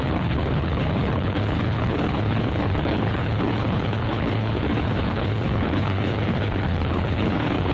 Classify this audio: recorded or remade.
remade